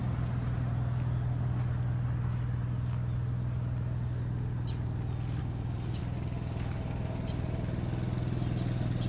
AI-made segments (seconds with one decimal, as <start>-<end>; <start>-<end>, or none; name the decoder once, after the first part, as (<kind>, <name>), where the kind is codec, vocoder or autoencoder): 5.4-6.0 (codec, DAC)